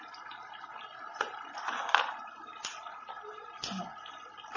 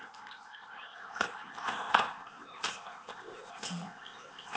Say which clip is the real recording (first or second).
first